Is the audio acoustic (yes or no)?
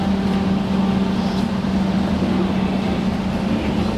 yes